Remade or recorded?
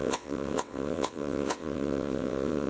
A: remade